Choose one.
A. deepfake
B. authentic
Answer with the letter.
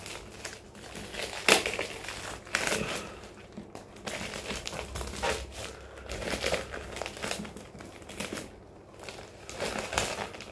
B